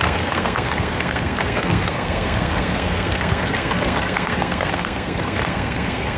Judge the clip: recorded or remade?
remade